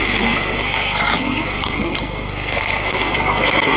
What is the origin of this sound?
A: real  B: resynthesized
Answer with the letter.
B